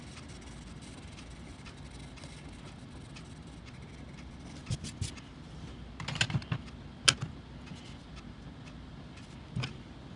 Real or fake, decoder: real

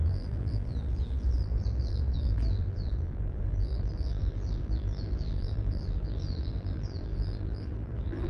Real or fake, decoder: fake, vocoder, BigVGAN v2